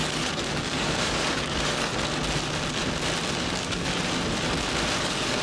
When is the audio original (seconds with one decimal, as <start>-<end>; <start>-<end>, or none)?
1.9-3.4; 3.9-5.0